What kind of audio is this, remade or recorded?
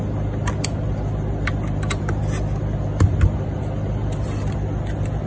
recorded